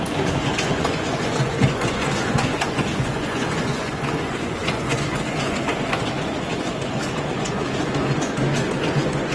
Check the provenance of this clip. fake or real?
fake